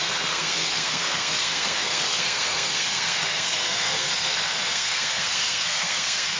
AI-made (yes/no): yes